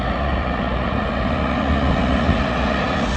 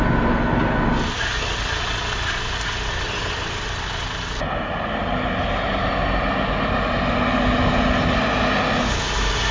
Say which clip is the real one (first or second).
second